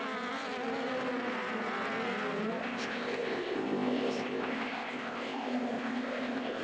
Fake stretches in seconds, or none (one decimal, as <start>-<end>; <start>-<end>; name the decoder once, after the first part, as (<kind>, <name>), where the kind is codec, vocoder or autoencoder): 2.6-6.6 (codec, ZipCodec)